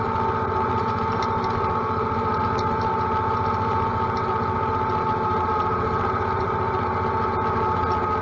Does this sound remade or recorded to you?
recorded